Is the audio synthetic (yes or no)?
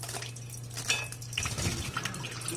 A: no